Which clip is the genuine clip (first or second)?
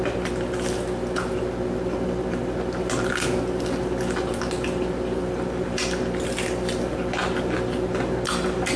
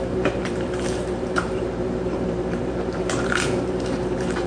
first